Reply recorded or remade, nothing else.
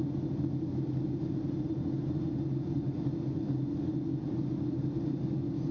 recorded